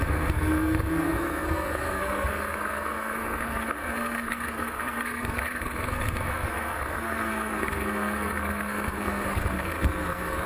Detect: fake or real fake